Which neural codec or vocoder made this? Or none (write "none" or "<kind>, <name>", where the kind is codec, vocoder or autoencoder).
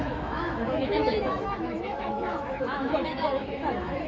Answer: autoencoder, DAC-VAE